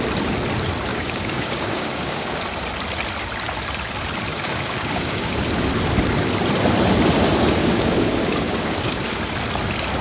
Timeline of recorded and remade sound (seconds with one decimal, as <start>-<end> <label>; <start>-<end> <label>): 0.0-0.9 recorded; 0.9-2.4 remade; 2.4-4.3 recorded; 4.3-5.4 remade; 5.4-7.6 recorded; 7.6-9.2 remade; 9.2-10.0 recorded